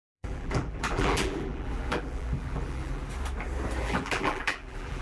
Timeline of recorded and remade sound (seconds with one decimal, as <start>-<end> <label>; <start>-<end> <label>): 0.0-3.0 remade; 3.0-3.8 recorded; 3.8-5.0 remade